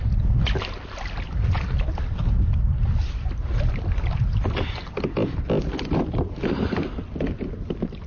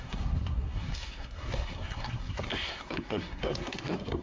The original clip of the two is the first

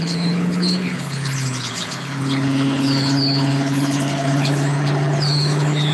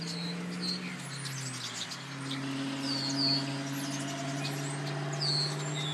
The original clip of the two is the second